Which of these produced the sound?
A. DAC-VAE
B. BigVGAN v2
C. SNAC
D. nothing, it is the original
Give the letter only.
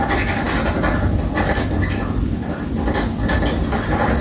D